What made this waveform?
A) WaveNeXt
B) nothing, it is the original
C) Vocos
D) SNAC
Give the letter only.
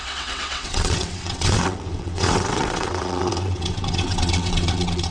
A